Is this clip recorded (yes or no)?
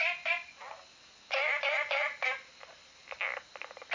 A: yes